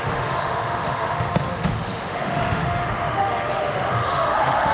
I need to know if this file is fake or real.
fake